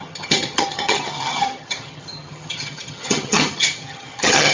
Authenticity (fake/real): fake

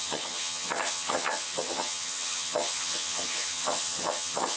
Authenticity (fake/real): fake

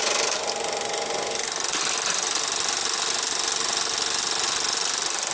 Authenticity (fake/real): real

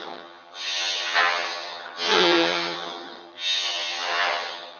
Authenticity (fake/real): fake